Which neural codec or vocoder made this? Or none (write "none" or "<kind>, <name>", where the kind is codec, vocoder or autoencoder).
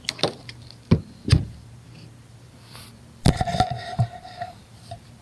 vocoder, BigVGAN v2